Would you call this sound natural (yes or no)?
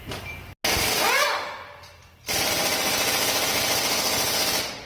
yes